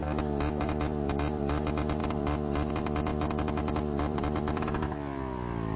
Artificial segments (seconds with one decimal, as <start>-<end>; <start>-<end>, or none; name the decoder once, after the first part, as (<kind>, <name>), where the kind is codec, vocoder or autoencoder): 0.6-5.8 (vocoder, BigVGAN v2)